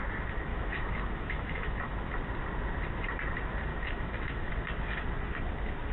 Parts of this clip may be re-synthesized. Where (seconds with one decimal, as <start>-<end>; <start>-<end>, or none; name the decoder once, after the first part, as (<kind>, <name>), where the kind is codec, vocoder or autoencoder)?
0.5-1.8 (autoencoder, DAC-VAE); 3.7-4.5